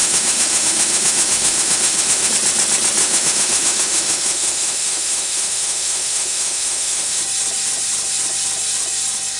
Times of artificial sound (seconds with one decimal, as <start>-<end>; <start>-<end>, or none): 0.0-2.3; 3.0-7.2